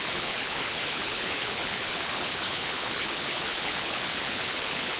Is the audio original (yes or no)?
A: no